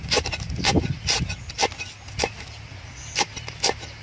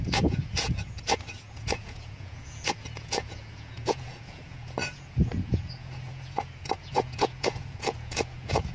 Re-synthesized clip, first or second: second